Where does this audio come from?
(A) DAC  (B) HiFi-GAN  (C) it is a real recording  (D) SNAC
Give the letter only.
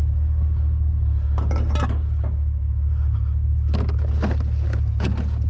C